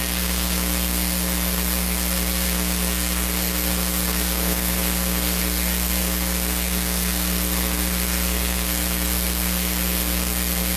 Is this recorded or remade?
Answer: remade